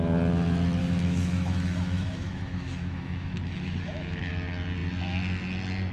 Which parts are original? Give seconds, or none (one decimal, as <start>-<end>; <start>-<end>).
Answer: 0.0-0.8; 4.3-5.9

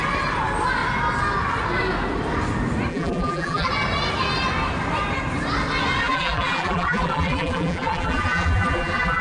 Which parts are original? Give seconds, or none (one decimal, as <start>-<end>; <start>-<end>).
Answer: 0.0-2.9; 3.7-6.0

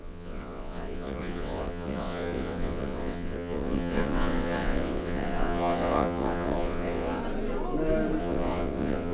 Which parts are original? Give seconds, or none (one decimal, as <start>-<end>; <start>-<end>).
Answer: 7.2-8.2

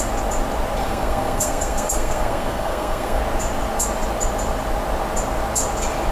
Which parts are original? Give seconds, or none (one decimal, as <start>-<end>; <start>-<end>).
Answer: 0.0-0.8; 3.2-6.1

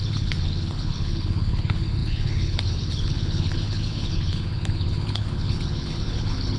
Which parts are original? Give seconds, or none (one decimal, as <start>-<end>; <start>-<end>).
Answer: none

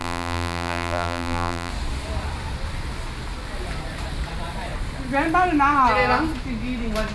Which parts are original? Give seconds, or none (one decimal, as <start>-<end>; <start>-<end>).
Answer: 1.7-7.1

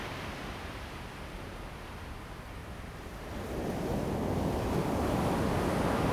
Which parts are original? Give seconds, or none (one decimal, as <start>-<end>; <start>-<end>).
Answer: 0.0-2.6; 4.9-6.1